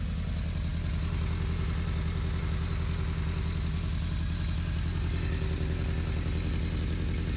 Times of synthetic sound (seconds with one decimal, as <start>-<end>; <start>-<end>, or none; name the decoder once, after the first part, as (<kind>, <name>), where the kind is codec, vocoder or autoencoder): none